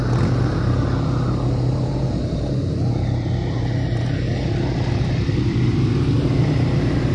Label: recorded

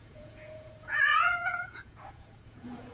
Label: remade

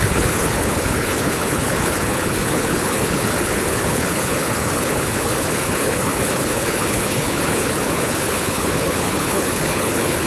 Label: remade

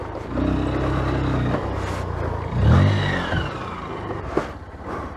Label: recorded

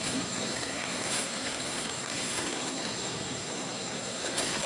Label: remade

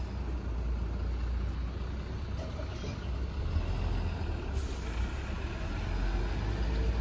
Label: recorded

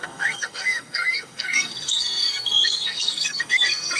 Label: remade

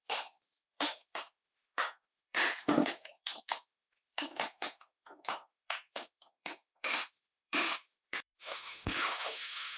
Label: remade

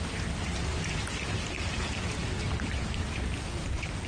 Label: recorded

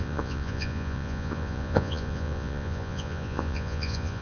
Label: remade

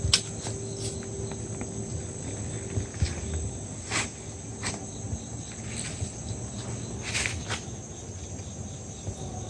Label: recorded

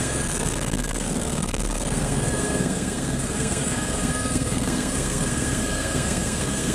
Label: remade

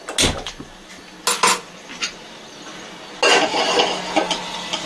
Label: recorded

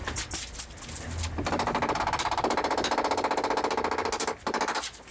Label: recorded